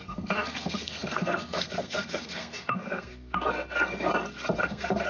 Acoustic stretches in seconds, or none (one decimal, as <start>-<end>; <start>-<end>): 4.1-4.6